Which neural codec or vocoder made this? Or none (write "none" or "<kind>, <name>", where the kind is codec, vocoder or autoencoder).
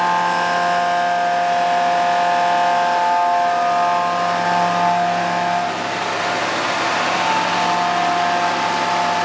none